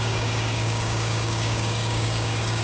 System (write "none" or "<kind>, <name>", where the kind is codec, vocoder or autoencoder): codec, DAC